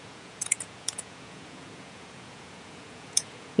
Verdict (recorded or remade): remade